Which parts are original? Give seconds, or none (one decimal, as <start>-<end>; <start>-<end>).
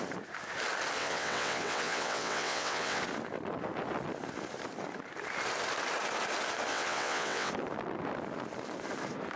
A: 0.0-1.0; 3.0-6.7; 7.5-9.4